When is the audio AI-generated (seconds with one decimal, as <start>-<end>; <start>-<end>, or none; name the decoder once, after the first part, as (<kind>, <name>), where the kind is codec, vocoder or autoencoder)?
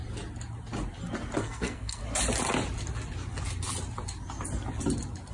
1.4-2.0 (codec, SNAC)